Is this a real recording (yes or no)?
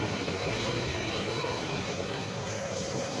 no